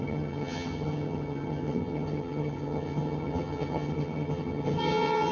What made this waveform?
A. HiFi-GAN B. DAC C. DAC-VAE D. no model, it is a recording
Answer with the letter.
A